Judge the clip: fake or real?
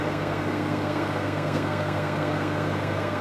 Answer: fake